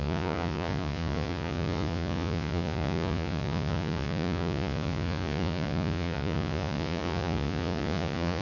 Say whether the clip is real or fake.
fake